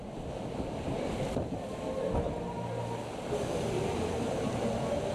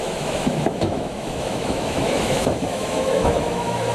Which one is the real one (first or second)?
first